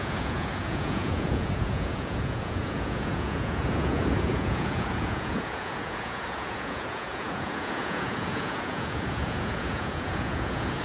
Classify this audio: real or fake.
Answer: fake